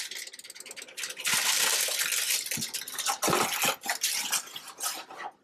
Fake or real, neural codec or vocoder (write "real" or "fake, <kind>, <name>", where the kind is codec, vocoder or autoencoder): real